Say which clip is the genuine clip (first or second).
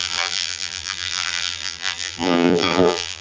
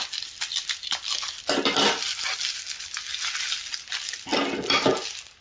second